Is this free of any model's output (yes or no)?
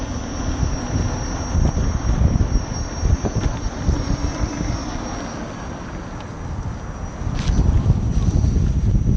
yes